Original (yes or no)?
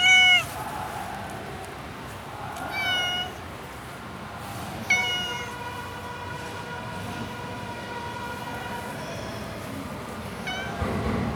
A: yes